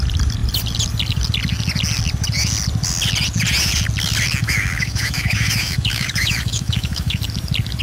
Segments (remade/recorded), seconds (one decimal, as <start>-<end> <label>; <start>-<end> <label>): 0.0-4.4 recorded; 4.4-7.2 remade; 7.2-7.8 recorded